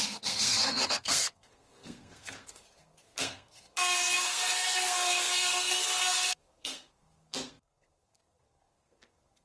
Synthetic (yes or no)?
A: yes